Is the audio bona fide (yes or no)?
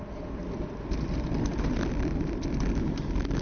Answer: yes